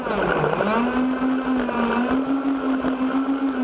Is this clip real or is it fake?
real